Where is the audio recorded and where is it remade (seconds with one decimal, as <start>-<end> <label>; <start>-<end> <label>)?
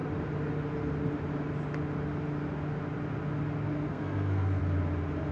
0.0-3.9 recorded; 3.9-4.6 remade; 4.6-5.3 recorded